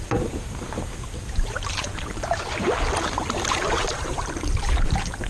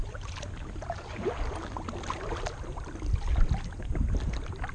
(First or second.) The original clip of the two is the second